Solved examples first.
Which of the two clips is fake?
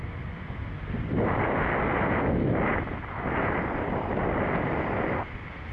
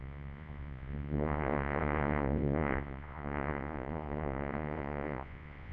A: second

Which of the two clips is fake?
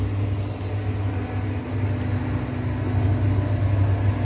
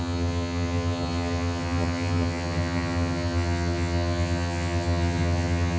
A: second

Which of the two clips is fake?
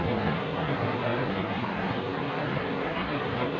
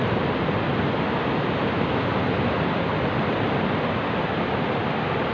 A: first